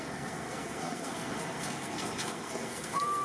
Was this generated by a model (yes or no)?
yes